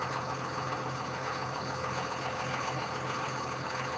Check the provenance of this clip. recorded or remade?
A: remade